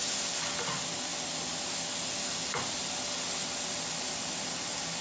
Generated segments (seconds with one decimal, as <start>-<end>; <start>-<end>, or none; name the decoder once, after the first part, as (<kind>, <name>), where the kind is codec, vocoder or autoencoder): none